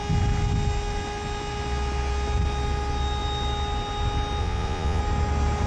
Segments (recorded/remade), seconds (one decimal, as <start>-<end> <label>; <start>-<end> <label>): 0.0-4.4 recorded; 4.4-5.0 remade; 5.0-5.7 recorded